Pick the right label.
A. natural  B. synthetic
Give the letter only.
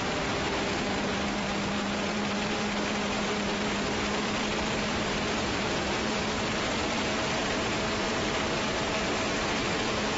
B